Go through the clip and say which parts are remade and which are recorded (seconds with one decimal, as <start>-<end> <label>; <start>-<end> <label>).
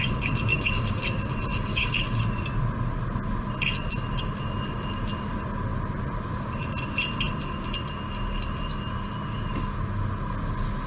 0.0-0.5 recorded; 0.5-1.0 remade; 1.0-1.5 recorded; 1.5-2.2 remade; 2.2-10.9 recorded